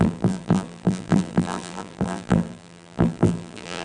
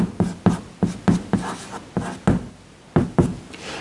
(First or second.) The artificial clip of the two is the first